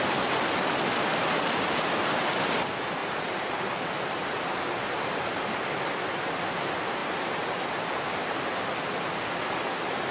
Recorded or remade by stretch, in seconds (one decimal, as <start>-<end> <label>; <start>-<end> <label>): 0.0-1.1 recorded; 1.1-2.2 remade; 2.2-3.0 recorded; 3.0-5.0 remade; 5.0-7.0 recorded; 7.0-8.6 remade; 8.6-10.1 recorded